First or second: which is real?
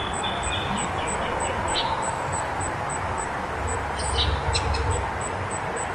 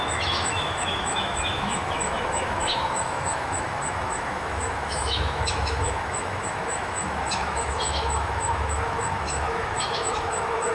first